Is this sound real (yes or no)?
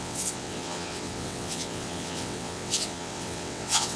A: no